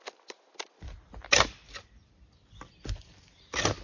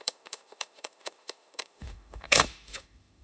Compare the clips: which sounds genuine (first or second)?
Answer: first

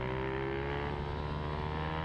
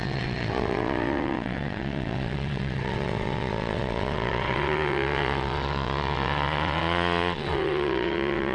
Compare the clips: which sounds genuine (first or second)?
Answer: first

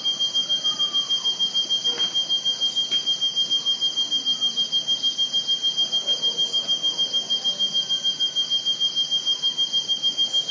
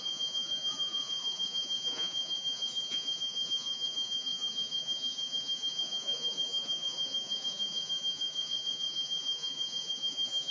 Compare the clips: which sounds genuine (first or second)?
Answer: first